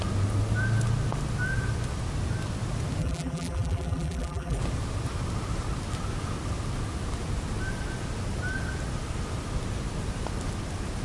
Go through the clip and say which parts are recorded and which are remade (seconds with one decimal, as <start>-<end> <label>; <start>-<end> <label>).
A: 0.0-3.0 recorded; 3.0-4.6 remade; 4.6-11.0 recorded